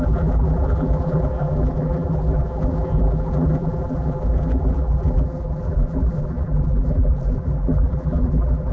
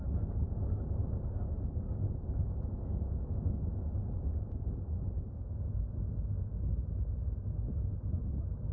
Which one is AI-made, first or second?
first